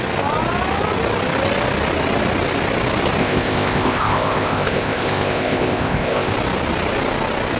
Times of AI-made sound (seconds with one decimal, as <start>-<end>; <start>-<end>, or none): 3.2-6.3